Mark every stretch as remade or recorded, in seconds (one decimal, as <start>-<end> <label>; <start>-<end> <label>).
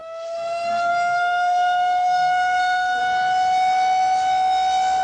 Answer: 0.0-3.0 remade; 3.0-5.0 recorded